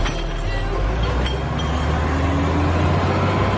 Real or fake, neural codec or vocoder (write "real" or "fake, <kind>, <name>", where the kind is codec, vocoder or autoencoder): real